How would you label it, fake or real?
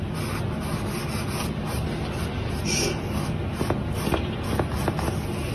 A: real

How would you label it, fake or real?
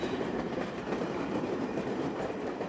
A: fake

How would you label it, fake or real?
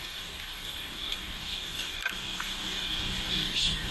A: fake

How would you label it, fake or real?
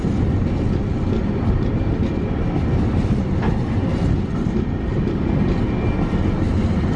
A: real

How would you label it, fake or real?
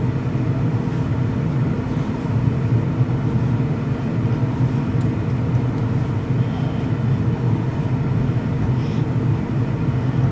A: real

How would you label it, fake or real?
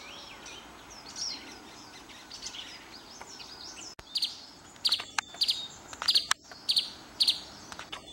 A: real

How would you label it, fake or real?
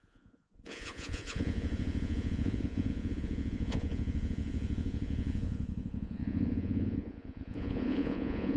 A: fake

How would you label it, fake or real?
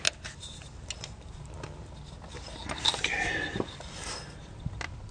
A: real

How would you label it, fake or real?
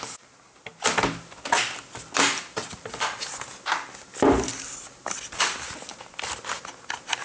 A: real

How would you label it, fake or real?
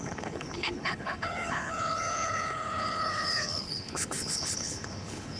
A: fake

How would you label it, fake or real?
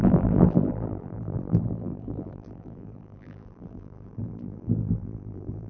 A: fake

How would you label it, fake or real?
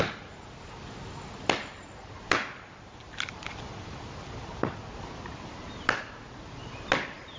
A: real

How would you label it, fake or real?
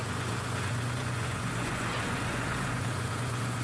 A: fake